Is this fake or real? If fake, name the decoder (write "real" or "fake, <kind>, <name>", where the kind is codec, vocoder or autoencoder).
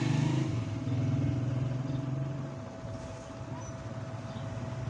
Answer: real